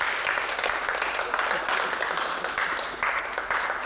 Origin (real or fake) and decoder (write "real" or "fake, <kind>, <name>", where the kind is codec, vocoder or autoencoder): real